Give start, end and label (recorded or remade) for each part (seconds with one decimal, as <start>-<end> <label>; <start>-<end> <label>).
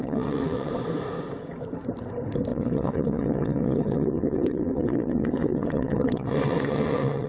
0.0-0.7 remade; 0.7-2.5 recorded; 2.5-7.3 remade